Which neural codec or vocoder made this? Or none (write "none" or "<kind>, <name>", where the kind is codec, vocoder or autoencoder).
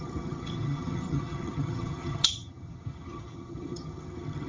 vocoder, HiFi-GAN